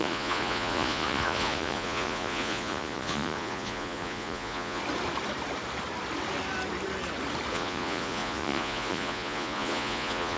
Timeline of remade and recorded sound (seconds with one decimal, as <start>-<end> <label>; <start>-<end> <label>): 0.0-4.8 remade; 4.8-7.5 recorded; 7.5-10.4 remade